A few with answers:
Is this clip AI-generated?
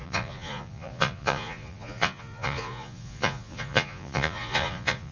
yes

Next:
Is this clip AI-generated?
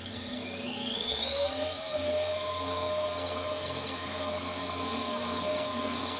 yes